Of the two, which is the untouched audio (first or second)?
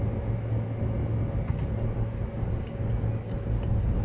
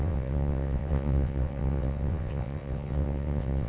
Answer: first